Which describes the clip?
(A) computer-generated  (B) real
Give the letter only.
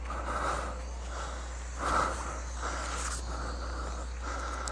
B